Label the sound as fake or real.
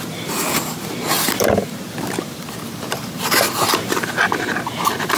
fake